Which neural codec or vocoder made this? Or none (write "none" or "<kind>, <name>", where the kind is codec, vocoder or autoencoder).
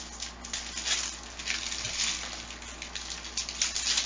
none